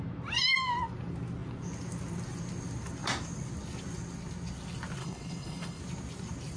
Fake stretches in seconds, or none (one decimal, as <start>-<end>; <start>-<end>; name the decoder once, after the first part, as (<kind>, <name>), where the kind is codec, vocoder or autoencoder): 5.0-5.8 (codec, HILCodec)